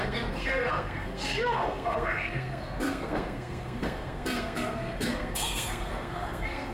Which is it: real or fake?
fake